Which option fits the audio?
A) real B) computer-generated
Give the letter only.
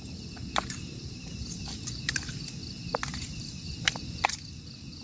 A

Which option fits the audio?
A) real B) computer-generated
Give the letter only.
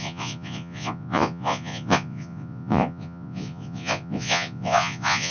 B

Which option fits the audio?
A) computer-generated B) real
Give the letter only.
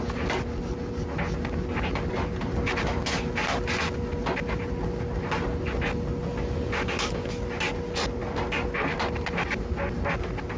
B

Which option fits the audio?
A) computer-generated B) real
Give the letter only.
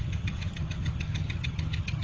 A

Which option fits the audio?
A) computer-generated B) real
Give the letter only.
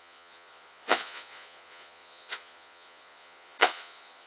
A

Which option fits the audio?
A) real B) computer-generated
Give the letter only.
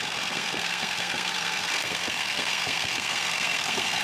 B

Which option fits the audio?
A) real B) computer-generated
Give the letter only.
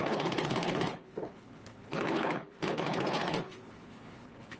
B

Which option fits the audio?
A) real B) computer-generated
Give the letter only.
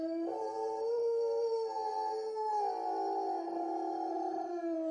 A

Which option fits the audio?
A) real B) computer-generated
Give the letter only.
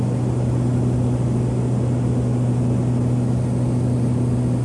A